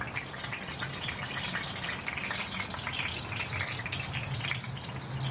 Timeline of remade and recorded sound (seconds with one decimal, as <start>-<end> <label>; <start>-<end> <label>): 0.0-5.3 recorded